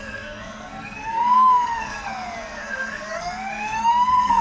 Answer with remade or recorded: remade